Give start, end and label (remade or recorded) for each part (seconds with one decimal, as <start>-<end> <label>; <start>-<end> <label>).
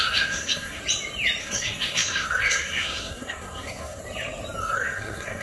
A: 0.0-0.8 remade; 0.8-1.4 recorded; 1.4-4.0 remade; 4.0-4.6 recorded; 4.6-5.4 remade